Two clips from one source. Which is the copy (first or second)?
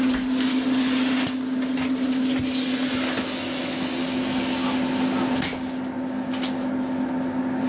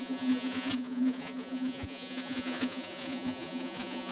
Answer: second